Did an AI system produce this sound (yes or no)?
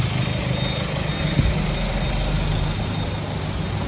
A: no